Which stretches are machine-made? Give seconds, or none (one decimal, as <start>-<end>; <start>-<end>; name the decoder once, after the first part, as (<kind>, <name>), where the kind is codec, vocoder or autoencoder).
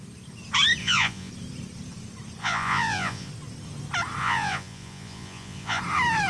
0.8-1.3 (vocoder, Vocos); 2.4-3.3; 4.2-5.8